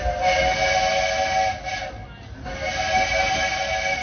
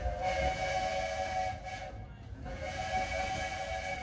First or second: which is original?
first